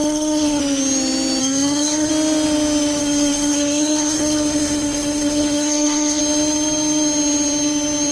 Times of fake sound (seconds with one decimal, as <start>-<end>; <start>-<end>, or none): 0.0-0.6; 1.4-2.1; 3.0-6.2